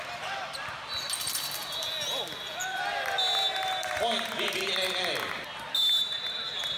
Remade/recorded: recorded